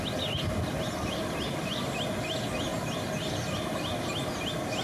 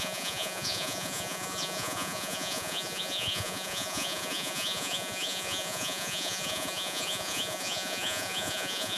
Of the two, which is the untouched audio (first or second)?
first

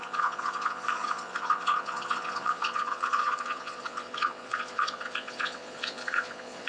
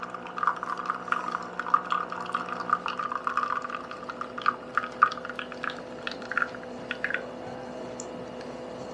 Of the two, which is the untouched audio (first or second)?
second